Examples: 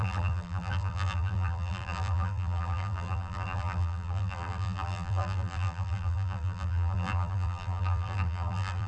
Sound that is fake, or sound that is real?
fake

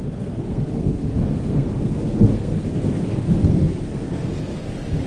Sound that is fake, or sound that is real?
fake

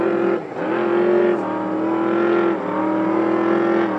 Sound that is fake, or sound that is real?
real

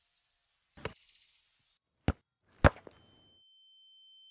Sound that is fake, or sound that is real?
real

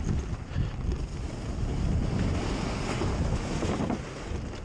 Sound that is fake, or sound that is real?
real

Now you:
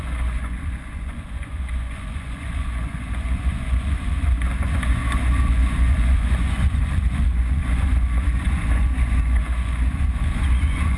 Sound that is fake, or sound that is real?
fake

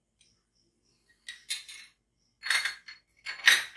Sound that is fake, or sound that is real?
real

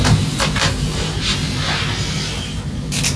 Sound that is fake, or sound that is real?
fake